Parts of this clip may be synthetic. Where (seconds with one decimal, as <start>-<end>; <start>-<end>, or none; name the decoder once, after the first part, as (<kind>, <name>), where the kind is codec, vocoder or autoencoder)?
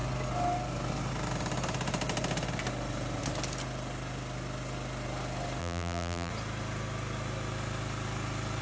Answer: 5.6-6.3 (vocoder, BigVGAN v2)